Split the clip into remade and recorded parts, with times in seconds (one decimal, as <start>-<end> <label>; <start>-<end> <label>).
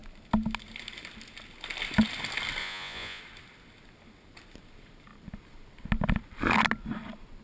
0.0-2.6 recorded; 2.6-3.2 remade; 3.2-7.4 recorded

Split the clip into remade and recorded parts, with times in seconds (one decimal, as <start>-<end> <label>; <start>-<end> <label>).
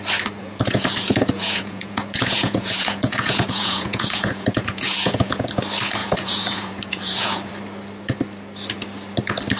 0.0-0.4 recorded; 0.4-5.5 remade; 5.5-6.0 recorded; 6.0-7.5 remade; 7.5-9.6 recorded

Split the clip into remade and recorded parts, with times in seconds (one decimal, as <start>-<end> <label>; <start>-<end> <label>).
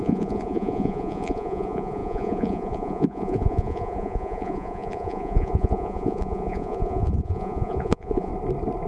0.0-8.3 remade; 8.3-8.9 recorded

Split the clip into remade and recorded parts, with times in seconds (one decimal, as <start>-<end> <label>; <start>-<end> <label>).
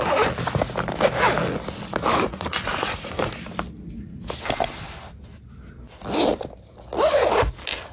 0.0-2.1 recorded; 2.1-3.3 remade; 3.3-7.9 recorded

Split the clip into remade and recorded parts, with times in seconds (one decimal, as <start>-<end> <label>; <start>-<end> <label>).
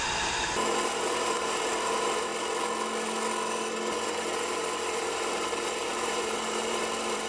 0.0-2.3 remade; 2.3-5.0 recorded; 5.0-7.3 remade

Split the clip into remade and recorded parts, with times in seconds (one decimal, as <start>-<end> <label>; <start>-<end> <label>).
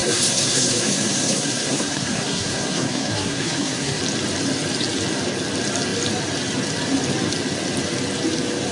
0.0-4.0 remade; 4.0-8.7 recorded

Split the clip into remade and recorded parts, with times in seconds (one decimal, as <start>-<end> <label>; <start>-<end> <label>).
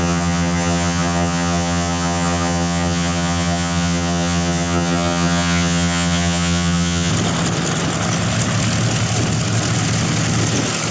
0.0-7.1 remade; 7.1-10.9 recorded